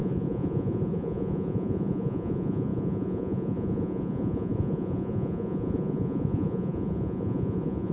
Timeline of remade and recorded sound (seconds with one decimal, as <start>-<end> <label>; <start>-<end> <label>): 0.0-7.9 remade